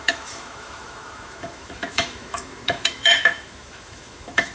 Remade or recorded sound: remade